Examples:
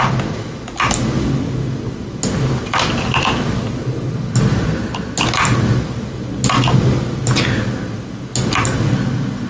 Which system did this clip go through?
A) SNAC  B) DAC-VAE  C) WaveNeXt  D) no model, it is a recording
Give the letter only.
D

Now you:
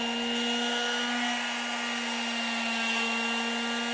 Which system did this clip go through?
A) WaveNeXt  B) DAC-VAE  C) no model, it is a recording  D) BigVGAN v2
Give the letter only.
C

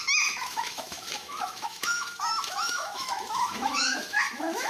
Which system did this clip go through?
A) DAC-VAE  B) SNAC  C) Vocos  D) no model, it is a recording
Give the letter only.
A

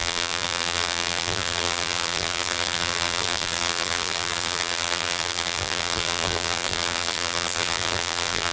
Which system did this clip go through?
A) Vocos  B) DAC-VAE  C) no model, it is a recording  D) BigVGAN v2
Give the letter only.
D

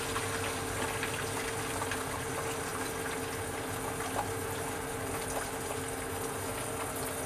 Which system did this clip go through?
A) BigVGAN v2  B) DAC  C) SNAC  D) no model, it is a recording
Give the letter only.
D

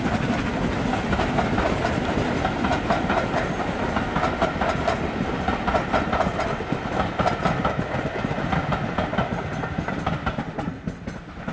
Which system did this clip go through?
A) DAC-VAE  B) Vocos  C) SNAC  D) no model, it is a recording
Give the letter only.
D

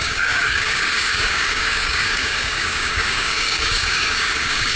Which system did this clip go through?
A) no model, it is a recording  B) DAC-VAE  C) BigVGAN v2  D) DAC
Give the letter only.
D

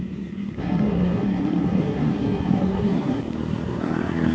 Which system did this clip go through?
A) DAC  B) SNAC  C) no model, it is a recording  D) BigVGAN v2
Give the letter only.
B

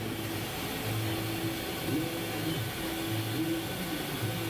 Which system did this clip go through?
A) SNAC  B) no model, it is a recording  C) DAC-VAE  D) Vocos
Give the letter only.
B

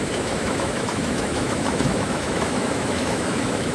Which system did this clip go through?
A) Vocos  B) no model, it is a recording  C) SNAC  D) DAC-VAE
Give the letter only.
D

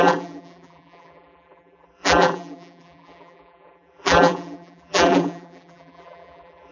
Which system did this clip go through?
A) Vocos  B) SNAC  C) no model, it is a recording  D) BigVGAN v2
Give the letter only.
D